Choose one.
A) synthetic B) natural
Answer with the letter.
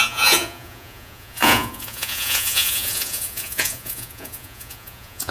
A